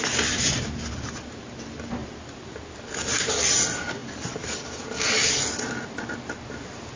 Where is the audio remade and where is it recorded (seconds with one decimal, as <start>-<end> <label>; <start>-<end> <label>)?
0.0-7.0 recorded